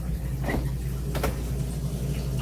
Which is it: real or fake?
real